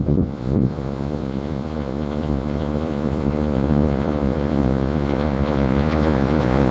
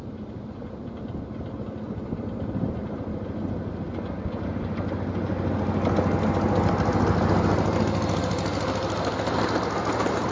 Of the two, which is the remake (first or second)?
first